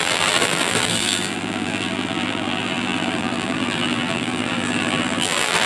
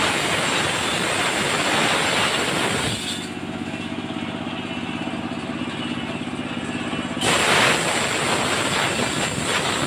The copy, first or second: first